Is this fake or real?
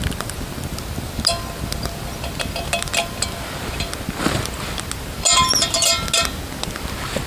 real